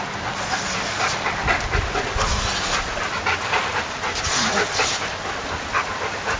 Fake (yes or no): no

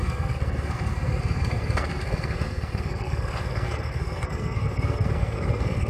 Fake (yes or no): yes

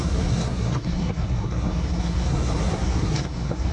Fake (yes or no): yes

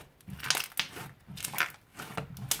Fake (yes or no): no